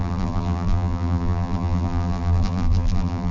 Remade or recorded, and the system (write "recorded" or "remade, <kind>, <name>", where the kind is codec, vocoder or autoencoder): remade, vocoder, BigVGAN v2